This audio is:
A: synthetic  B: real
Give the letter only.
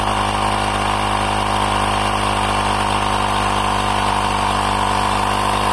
B